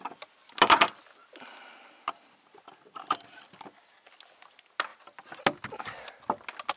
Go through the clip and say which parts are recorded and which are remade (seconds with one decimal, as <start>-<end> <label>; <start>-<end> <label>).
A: 0.0-6.8 recorded